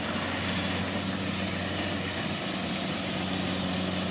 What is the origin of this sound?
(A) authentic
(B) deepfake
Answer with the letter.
A